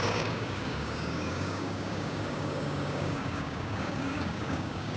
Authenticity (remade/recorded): remade